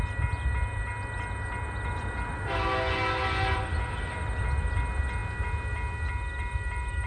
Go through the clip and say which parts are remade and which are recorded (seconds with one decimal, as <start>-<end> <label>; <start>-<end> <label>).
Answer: 0.0-7.1 recorded